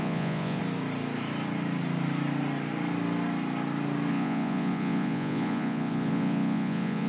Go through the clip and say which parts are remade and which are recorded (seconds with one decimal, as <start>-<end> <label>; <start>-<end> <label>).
0.0-0.6 remade; 0.6-4.1 recorded; 4.1-7.1 remade